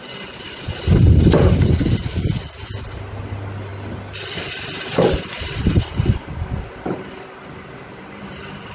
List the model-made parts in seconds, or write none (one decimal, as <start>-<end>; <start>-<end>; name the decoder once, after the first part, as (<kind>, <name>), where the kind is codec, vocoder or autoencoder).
none